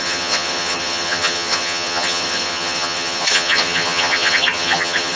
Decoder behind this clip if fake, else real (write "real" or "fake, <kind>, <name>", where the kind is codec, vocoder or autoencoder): fake, vocoder, HiFi-GAN